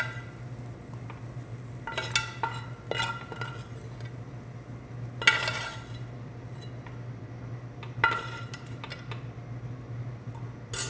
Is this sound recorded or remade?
recorded